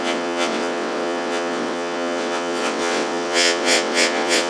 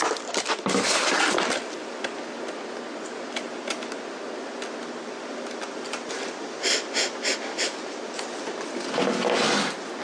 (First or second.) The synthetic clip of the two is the first